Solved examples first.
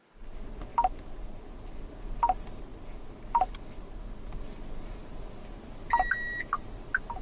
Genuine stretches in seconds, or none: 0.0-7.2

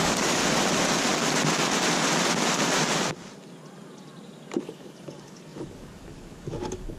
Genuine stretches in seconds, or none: 0.4-4.6